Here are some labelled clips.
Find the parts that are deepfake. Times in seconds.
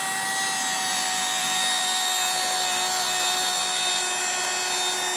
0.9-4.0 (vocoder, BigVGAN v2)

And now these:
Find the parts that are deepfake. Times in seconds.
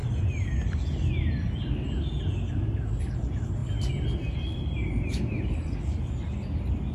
none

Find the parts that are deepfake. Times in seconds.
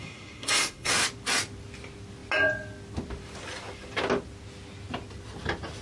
0.0-0.9 (codec, SNAC)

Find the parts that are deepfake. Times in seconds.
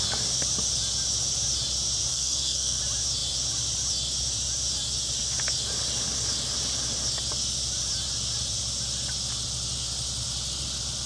2.1-2.8 (codec, SNAC)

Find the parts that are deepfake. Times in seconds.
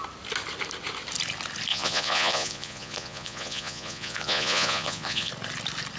1.7-5.3 (vocoder, Vocos)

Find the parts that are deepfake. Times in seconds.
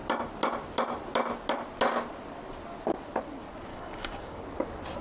3.7-4.4 (codec, DAC)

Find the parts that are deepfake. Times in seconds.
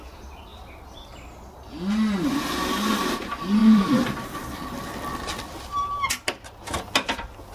0.5-1.4 (vocoder, BigVGAN v2); 3.6-6.1